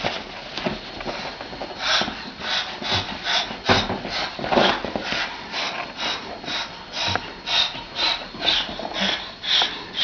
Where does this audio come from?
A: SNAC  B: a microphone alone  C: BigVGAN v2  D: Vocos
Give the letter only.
B